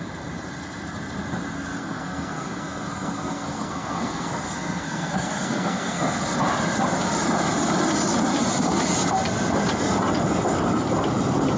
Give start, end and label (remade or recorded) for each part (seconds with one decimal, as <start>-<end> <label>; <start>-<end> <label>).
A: 0.0-1.7 recorded; 1.7-6.2 remade; 6.2-11.6 recorded